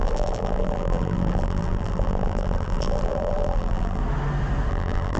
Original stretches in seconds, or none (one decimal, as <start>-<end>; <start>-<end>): 4.0-4.7